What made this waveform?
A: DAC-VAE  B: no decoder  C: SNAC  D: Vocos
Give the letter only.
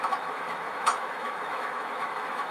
A